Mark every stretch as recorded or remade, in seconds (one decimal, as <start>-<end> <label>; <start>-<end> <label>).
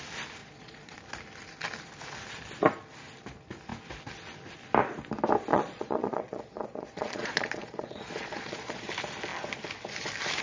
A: 0.0-0.4 recorded; 0.4-1.0 remade; 1.0-5.5 recorded; 5.5-8.9 remade; 8.9-10.4 recorded